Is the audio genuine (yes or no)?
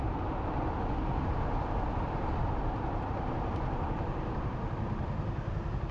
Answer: yes